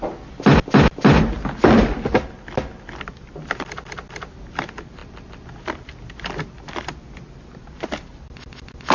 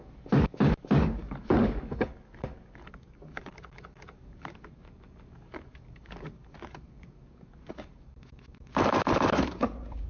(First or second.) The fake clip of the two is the second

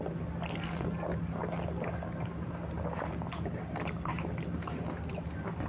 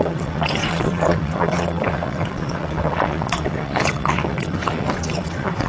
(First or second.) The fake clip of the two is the second